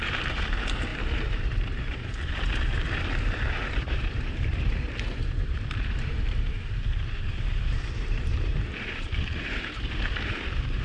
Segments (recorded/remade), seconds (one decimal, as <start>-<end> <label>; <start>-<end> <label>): 0.0-10.8 remade